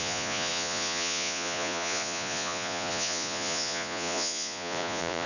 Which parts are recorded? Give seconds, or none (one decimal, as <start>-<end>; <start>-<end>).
none